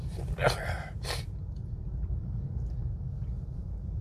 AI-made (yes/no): yes